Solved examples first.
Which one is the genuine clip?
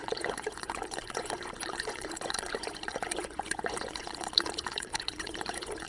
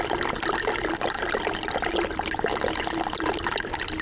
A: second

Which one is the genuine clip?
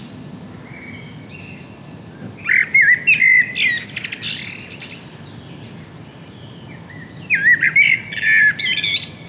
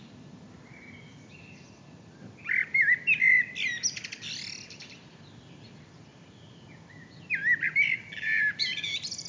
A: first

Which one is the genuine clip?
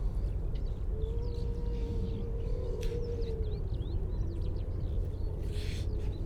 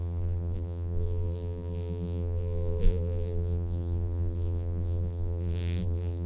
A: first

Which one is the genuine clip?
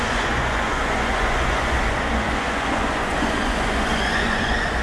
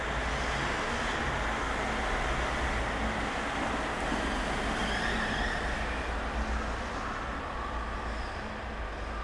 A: second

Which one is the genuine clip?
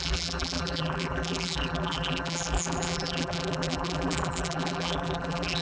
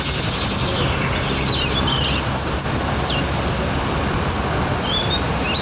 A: second